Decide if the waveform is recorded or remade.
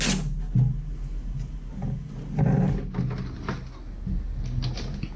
recorded